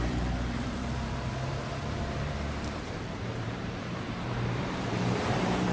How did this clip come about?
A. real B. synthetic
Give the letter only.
B